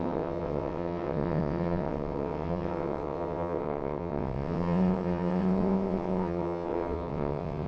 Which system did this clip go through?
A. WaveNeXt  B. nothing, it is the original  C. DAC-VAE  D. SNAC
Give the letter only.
A